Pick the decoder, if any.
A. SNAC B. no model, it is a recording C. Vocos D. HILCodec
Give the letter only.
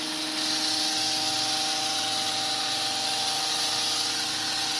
B